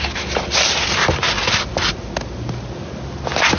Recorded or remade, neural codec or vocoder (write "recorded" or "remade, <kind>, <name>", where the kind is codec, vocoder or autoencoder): recorded